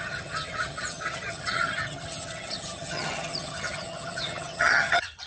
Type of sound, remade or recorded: remade